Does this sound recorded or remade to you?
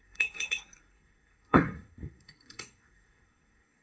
remade